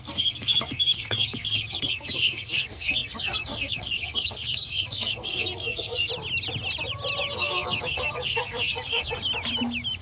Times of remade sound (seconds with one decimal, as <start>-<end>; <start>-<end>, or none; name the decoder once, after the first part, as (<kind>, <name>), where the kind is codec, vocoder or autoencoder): 0.0-6.1 (codec, SNAC); 7.3-9.2